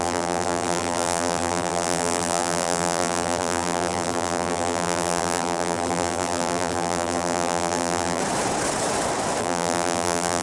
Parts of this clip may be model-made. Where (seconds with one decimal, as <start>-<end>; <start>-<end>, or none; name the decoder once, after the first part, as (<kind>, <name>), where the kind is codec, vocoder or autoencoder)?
0.0-8.2 (vocoder, BigVGAN v2); 9.4-10.4